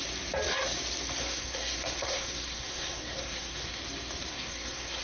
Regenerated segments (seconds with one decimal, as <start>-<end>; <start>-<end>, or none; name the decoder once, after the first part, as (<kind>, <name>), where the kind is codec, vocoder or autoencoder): 1.2-3.8 (codec, SNAC); 4.3-5.0